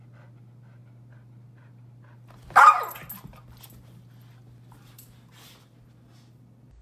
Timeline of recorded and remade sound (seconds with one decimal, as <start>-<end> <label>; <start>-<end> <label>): 0.0-6.8 recorded